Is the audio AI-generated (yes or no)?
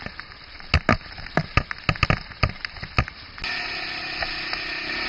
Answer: no